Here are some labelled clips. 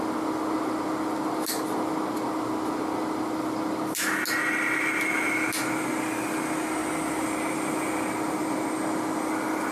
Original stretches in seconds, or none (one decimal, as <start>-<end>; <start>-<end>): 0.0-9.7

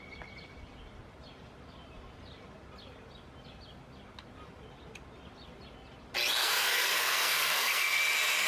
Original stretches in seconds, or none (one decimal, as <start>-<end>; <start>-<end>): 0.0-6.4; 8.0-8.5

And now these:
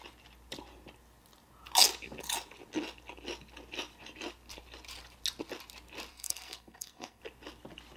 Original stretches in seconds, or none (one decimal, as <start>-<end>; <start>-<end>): 0.0-6.1; 7.2-8.0